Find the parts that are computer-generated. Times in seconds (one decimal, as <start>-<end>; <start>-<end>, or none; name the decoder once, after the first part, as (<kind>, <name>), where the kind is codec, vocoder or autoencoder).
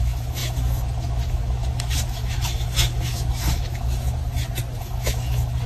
0.0-4.2 (autoencoder, DAC-VAE); 4.8-5.7